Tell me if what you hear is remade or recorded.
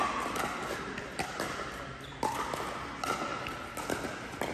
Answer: recorded